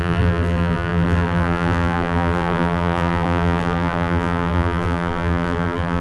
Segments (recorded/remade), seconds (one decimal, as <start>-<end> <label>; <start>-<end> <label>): 0.0-6.0 remade